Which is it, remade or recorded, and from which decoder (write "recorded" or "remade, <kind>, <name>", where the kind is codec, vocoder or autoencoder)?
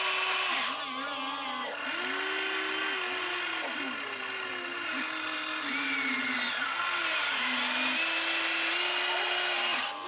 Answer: recorded